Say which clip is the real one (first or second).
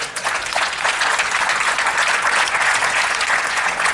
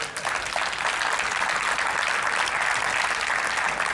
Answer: second